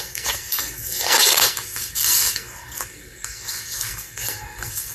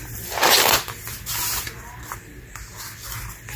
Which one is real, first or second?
second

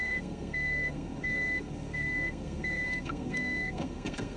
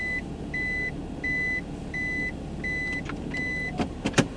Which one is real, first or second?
second